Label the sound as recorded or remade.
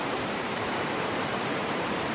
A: remade